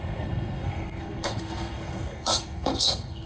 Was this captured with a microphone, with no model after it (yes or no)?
no